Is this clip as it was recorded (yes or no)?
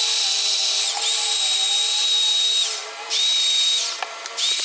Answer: yes